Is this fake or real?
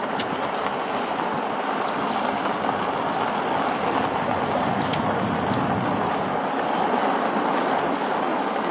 real